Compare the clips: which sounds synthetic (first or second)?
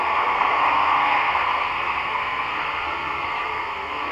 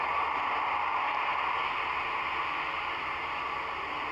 first